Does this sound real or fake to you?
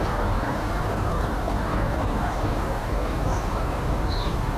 fake